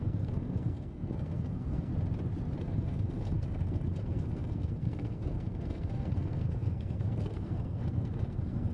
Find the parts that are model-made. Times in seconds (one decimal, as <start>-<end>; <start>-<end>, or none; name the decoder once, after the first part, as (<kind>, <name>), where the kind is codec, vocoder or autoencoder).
0.0-1.9 (codec, SNAC); 2.6-8.7